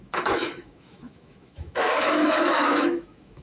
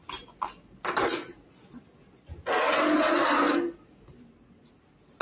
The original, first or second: second